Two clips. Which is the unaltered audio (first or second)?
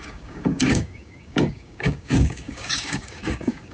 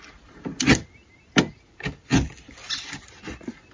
second